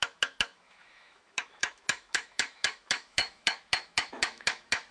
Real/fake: fake